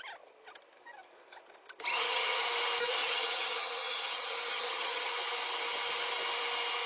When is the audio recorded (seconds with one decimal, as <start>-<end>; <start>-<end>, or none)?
0.0-1.9; 2.4-3.0; 5.1-6.9